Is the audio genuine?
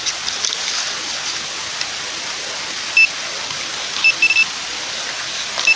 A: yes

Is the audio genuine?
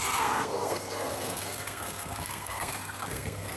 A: no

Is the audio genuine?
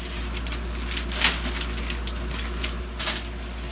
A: yes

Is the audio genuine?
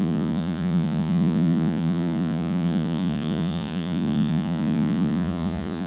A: no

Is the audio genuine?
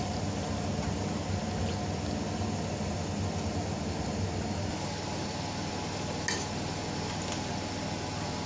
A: yes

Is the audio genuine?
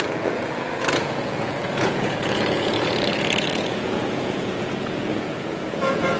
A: no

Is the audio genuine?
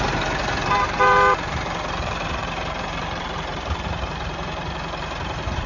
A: no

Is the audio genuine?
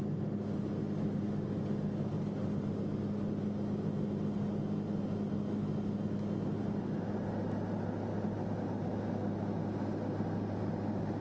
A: yes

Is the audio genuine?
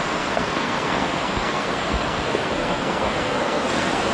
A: no